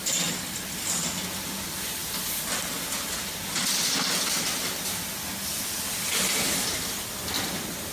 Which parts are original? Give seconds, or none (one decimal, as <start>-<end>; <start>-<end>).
0.0-7.9